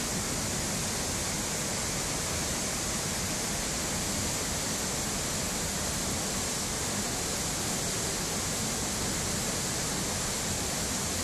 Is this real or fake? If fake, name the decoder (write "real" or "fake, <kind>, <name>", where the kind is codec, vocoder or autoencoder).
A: real